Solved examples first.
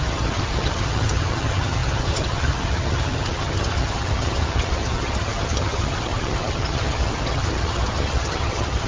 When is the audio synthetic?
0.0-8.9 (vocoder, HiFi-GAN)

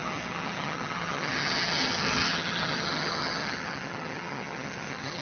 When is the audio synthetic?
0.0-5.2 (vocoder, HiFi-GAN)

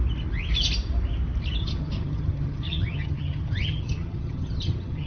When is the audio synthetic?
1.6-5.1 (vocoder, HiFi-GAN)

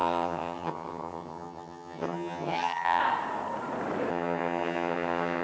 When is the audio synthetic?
0.0-3.0 (vocoder, HiFi-GAN); 4.1-5.4

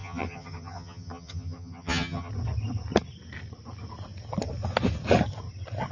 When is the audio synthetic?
0.0-2.3 (vocoder, HiFi-GAN)

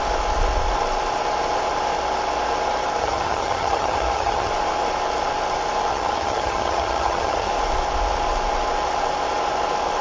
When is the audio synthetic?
3.0-4.5 (vocoder, HiFi-GAN); 5.9-7.5

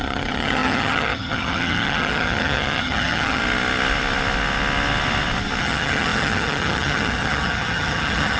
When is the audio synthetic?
0.0-3.4 (vocoder, HiFi-GAN); 5.6-8.4